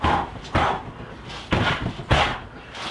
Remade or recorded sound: recorded